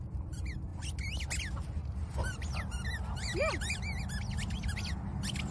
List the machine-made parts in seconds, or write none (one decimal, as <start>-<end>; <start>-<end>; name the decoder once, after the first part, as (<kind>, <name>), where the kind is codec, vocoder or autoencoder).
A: none